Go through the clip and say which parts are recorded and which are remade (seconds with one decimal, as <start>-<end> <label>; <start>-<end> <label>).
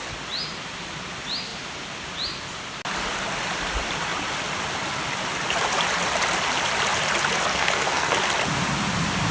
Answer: 0.0-7.5 recorded; 7.5-8.2 remade; 8.2-9.3 recorded